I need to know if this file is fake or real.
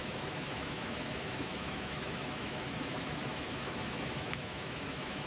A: fake